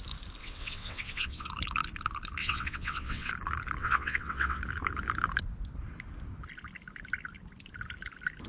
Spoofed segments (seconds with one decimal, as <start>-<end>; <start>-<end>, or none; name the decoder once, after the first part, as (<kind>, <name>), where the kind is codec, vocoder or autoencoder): 0.4-1.5 (vocoder, WaveNeXt); 2.4-3.3; 3.8-4.6